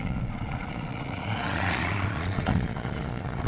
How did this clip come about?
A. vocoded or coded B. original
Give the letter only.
A